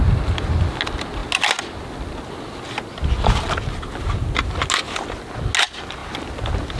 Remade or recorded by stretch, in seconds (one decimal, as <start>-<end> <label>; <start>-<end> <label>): 0.0-6.8 recorded